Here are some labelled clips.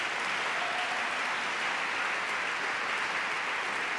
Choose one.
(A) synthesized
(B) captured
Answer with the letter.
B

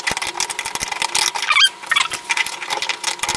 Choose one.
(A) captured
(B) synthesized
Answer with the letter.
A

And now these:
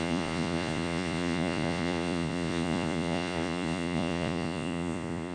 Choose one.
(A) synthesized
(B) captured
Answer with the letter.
A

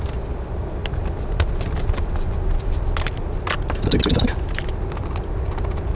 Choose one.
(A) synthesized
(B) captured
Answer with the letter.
B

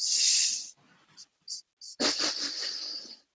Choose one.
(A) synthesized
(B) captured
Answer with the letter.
B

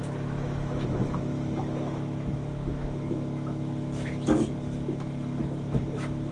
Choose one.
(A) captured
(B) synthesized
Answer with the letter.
B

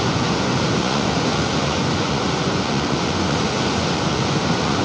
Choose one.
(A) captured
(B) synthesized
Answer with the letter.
B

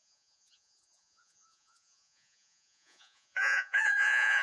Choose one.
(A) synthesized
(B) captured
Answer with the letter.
A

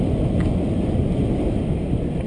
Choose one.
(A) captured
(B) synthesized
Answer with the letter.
A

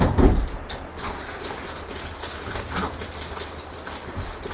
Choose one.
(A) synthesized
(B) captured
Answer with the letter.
B